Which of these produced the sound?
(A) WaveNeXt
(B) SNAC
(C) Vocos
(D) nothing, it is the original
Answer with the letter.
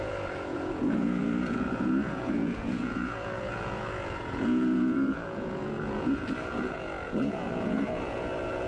C